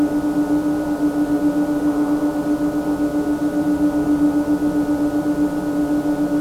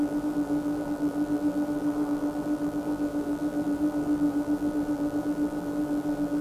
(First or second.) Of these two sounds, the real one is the first